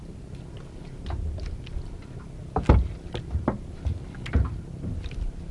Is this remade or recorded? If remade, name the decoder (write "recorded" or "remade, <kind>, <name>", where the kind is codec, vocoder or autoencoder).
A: recorded